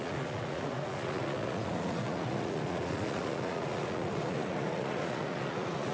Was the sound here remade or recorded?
remade